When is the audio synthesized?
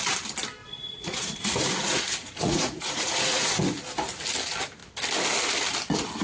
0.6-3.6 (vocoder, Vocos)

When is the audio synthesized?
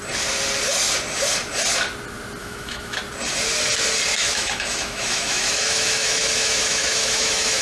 2.4-3.0 (autoencoder, DAC-VAE); 4.1-7.6